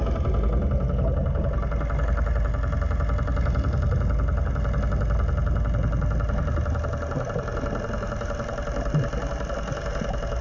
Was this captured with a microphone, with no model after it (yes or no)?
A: yes